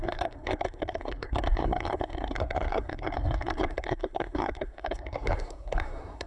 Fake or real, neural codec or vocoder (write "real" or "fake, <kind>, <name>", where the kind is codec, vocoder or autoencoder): fake, codec, SNAC